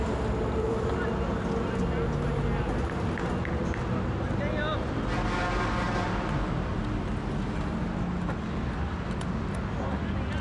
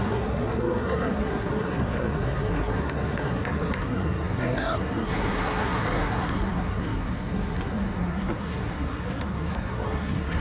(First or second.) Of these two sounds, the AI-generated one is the second